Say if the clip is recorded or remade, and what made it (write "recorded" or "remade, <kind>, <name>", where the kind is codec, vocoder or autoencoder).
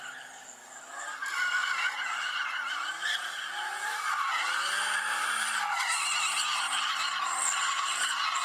recorded